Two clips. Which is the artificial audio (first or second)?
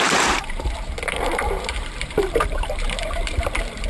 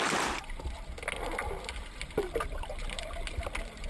first